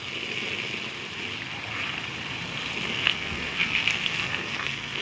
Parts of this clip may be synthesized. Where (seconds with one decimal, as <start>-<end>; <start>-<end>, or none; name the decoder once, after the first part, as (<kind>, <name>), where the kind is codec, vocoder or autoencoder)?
2.9-5.0 (codec, SNAC)

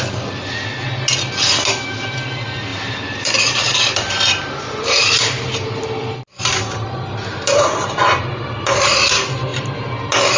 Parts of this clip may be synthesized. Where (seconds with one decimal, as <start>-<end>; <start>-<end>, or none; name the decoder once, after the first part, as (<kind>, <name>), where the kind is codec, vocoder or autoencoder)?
2.7-7.9 (vocoder, BigVGAN v2); 9.5-10.0

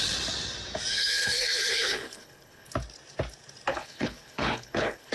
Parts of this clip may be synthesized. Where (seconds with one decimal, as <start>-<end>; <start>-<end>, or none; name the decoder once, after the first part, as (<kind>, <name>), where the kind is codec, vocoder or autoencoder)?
0.9-2.7 (codec, HILCodec); 3.7-5.1

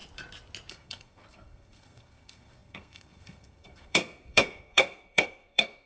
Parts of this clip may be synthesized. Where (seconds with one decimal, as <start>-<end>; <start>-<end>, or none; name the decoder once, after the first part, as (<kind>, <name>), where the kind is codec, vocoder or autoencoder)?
0.7-5.9 (codec, SNAC)

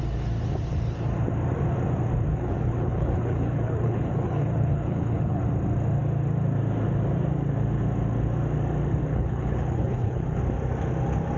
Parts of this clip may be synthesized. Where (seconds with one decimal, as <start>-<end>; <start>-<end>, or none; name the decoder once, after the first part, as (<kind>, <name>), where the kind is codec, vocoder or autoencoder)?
2.3-5.4 (codec, HILCodec); 9.0-10.4

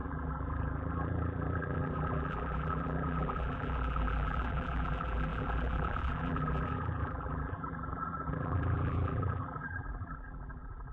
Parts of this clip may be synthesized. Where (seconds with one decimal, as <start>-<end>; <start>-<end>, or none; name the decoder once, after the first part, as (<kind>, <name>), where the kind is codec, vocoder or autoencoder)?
0.0-10.9 (vocoder, BigVGAN v2)

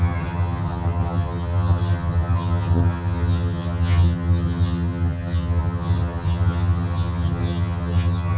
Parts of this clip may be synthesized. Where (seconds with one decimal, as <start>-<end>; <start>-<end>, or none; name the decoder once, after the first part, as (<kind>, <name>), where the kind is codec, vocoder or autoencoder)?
0.0-8.4 (vocoder, HiFi-GAN)